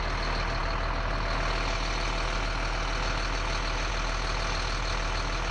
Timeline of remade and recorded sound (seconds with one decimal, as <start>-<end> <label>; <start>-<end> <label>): 0.0-5.5 recorded